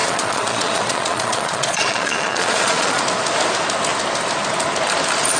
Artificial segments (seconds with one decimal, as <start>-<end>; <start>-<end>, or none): 0.0-3.0